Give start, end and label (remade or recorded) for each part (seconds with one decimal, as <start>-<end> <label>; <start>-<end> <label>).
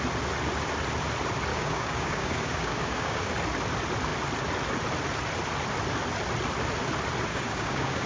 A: 0.0-1.5 recorded; 1.5-3.3 remade; 3.3-7.3 recorded; 7.3-8.1 remade